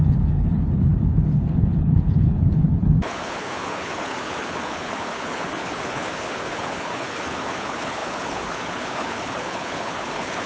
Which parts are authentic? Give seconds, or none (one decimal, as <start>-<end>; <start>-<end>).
none